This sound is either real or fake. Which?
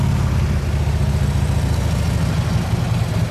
real